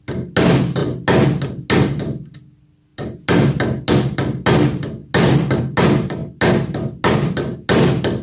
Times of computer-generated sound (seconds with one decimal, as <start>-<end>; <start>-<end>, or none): none